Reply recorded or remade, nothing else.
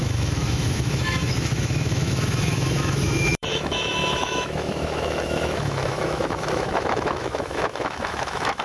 remade